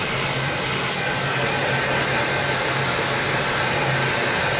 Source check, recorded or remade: recorded